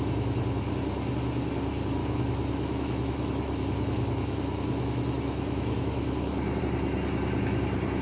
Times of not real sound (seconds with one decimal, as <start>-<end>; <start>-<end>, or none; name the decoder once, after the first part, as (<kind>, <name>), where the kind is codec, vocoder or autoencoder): 2.0-6.6 (autoencoder, DAC-VAE)